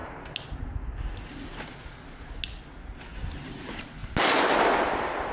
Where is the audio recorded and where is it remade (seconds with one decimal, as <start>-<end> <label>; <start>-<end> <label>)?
0.0-5.3 recorded